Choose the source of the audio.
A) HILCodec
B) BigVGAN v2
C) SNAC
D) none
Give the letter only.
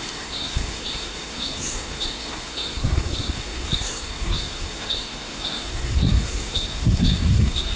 C